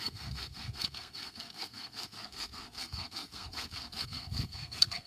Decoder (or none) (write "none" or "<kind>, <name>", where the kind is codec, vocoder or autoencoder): codec, SNAC